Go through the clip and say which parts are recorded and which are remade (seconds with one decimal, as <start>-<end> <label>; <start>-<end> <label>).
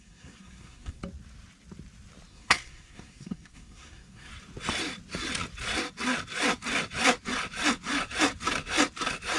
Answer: 0.0-1.0 remade; 1.0-2.3 recorded; 2.3-4.3 remade; 4.3-9.4 recorded